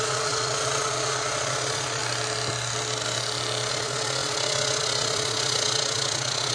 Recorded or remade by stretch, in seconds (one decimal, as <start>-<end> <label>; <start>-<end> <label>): 0.0-2.0 remade; 2.0-3.7 recorded; 3.7-6.5 remade